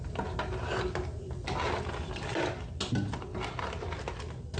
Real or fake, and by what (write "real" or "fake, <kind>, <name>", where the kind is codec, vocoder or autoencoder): real